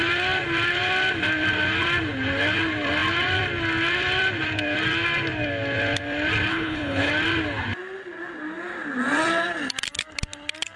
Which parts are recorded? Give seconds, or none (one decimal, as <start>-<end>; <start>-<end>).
0.0-6.5; 7.1-10.8